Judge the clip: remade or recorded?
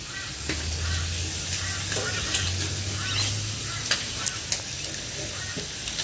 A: recorded